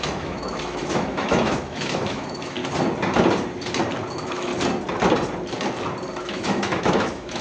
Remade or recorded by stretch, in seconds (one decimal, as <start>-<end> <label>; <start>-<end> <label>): 0.0-2.6 remade; 2.6-4.1 recorded; 4.1-4.5 remade; 4.5-6.2 recorded; 6.2-7.4 remade